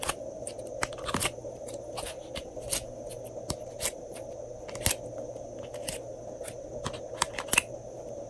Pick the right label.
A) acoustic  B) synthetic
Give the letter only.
A